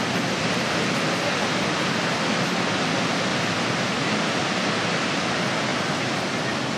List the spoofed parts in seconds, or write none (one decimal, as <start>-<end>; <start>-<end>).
0.0-5.7